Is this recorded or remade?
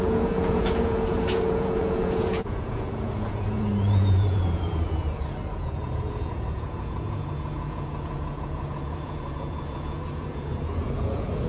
remade